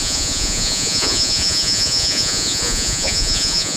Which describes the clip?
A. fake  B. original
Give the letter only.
A